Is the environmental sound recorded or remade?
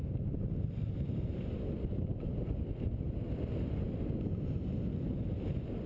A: recorded